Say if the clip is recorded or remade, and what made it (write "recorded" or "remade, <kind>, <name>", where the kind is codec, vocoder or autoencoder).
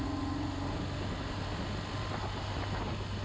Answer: recorded